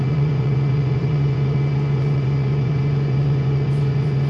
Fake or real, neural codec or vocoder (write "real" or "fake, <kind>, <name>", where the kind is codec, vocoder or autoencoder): fake, vocoder, Vocos